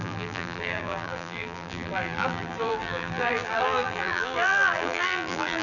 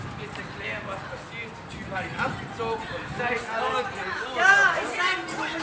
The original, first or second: second